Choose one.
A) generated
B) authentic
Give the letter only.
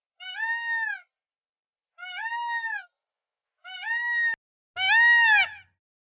B